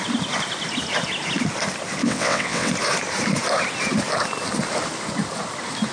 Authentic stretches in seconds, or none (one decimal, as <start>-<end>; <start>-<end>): 0.0-2.0; 2.7-5.9